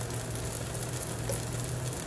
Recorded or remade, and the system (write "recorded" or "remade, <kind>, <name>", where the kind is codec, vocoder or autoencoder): recorded